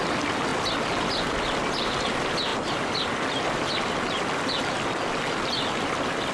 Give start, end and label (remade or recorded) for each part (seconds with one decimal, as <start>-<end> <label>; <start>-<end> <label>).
0.0-6.3 recorded